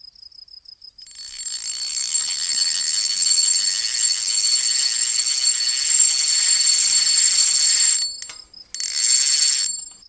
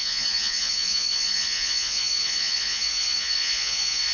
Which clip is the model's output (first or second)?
second